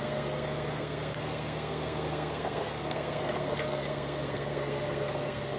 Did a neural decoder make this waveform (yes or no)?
yes